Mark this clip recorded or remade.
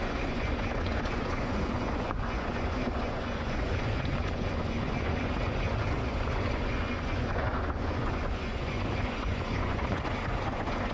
remade